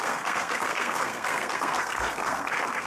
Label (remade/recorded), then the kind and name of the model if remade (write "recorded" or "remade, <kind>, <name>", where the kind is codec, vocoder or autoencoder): remade, codec, SNAC